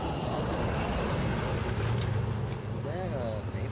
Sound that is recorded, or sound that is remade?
recorded